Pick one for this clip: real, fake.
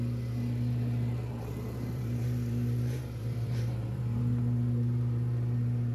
fake